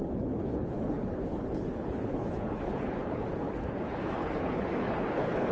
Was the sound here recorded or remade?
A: remade